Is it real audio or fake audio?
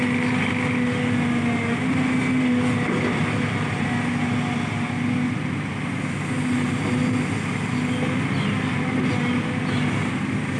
real